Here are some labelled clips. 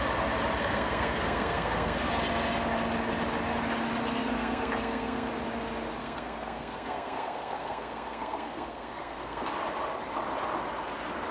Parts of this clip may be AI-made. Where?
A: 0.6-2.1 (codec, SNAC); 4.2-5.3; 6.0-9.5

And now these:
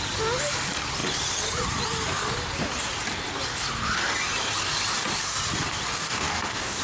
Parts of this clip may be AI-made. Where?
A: 5.9-6.8 (codec, DAC)

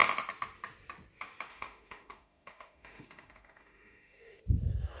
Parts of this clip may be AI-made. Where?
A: 1.5-4.4 (autoencoder, DAC-VAE)

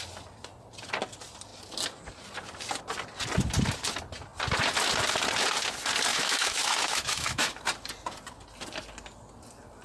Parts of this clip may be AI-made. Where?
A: 6.1-7.5 (autoencoder, DAC-VAE)

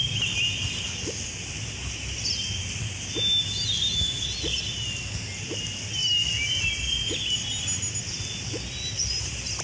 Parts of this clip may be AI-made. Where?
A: none

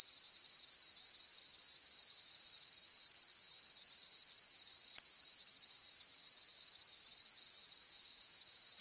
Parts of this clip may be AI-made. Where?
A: 7.6-8.8 (vocoder, Vocos)

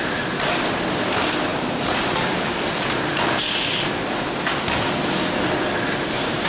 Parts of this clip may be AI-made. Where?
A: none

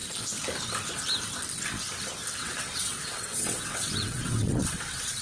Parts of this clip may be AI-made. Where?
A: 2.4-5.2 (vocoder, WaveNeXt)